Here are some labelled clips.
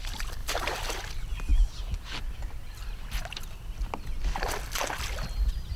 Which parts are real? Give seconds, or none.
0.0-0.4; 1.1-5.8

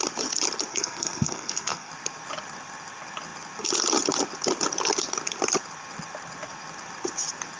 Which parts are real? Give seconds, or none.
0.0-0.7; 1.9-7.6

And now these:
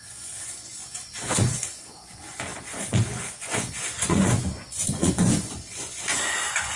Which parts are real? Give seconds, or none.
none

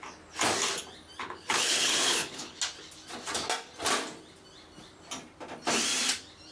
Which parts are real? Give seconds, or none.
0.0-1.2; 2.6-6.5